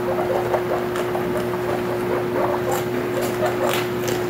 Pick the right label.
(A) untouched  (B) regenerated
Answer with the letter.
A